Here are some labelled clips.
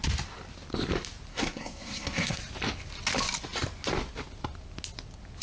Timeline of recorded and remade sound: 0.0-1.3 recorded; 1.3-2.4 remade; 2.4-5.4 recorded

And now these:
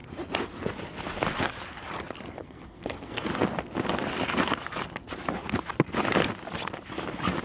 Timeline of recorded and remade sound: 0.0-2.4 recorded; 2.4-3.3 remade; 3.3-7.4 recorded

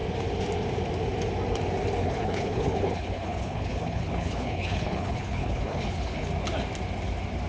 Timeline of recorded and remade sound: 0.0-2.0 recorded; 2.0-6.3 remade; 6.3-7.5 recorded

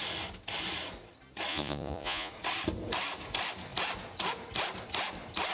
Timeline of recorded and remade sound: 0.0-1.5 recorded; 1.5-2.3 remade; 2.3-5.5 recorded